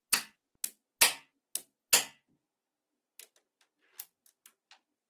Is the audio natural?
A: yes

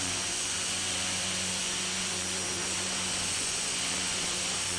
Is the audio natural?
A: no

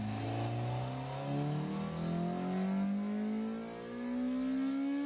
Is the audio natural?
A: yes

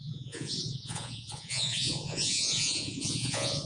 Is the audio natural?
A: no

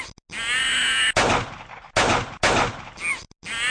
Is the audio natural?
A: yes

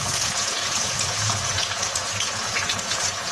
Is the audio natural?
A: no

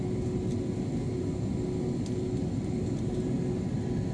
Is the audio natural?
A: yes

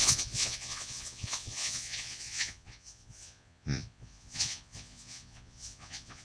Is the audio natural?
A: no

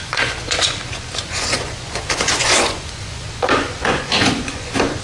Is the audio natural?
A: no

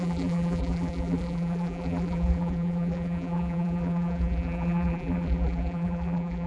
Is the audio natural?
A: no